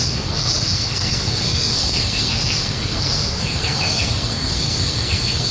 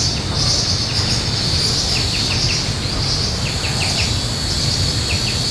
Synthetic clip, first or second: first